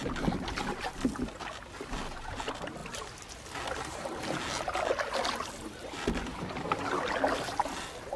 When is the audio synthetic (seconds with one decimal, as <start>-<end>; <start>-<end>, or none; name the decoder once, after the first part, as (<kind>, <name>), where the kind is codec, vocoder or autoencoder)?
none